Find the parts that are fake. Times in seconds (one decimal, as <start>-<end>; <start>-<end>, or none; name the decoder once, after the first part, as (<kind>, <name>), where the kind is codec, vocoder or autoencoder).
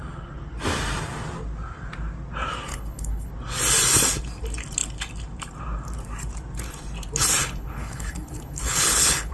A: 2.7-3.3 (codec, HILCodec); 7.4-9.3